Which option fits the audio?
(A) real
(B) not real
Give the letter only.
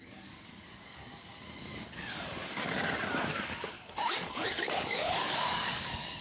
B